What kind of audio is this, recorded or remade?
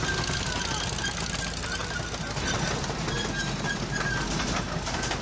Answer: recorded